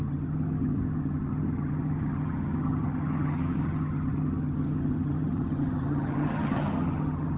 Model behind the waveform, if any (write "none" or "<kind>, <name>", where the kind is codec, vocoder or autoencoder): vocoder, HiFi-GAN